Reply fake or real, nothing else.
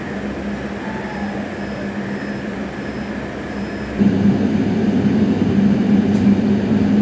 real